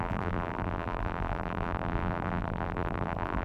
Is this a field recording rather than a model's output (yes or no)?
no